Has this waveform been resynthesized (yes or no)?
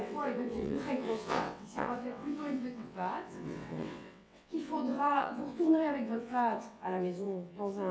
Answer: yes